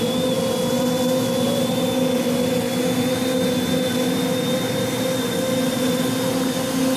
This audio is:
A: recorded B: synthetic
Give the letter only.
A